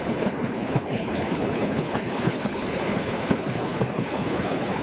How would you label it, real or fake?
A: fake